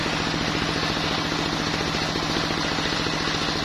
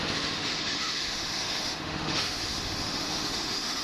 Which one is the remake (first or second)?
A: second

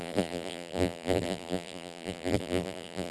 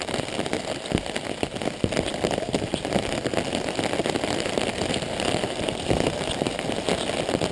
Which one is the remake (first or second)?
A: first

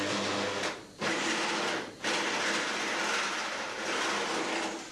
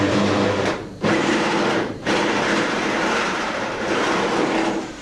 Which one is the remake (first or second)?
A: second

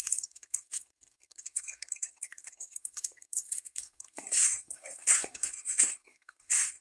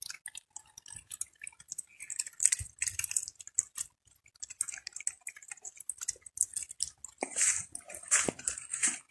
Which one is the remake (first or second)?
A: first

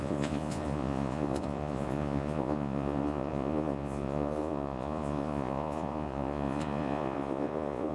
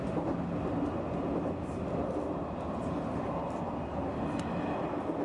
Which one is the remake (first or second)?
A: first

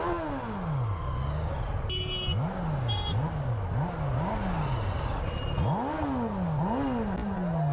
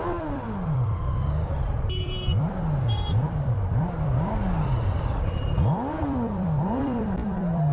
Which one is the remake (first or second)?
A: second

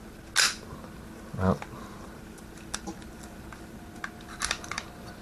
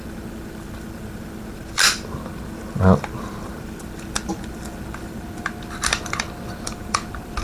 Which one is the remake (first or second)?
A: second